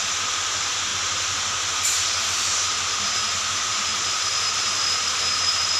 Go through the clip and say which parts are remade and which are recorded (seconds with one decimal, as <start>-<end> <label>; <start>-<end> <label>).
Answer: 0.0-0.9 remade; 0.9-2.3 recorded; 2.3-3.9 remade; 3.9-4.4 recorded; 4.4-5.8 remade